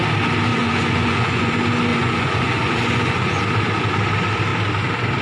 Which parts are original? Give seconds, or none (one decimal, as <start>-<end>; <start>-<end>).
0.0-0.5; 1.5-1.9; 3.4-5.2